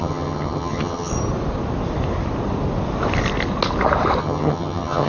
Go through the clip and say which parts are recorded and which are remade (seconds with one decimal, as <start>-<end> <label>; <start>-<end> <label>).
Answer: 0.0-1.1 remade; 1.1-4.2 recorded; 4.2-5.1 remade